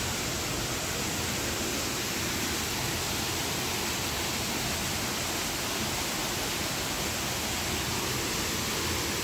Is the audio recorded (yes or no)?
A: yes